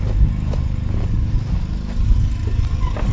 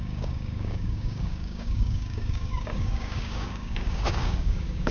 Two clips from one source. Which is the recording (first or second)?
first